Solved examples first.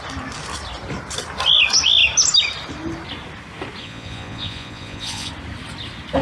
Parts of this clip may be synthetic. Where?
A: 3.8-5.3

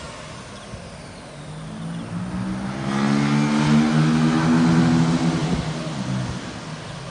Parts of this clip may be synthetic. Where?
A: none

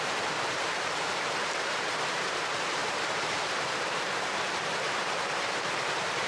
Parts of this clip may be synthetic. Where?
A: 0.0-6.3

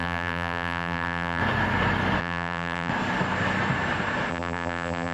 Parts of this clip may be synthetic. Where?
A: 0.0-1.4; 2.2-2.9; 4.3-5.1

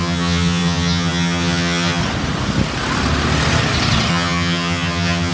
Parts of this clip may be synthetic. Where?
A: 0.0-2.0; 4.1-5.3

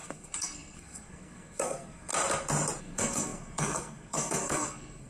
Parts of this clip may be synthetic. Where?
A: 0.0-2.1; 2.8-5.1